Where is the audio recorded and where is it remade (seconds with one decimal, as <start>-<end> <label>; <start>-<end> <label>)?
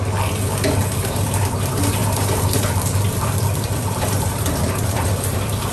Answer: 0.0-2.0 recorded; 2.0-5.7 remade